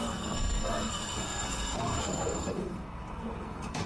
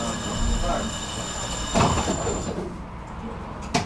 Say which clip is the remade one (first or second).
first